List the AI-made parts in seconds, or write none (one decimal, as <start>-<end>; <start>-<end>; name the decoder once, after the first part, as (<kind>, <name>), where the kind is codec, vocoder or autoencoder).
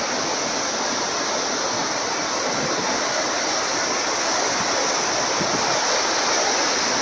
none